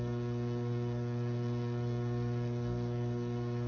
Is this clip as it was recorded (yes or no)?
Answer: no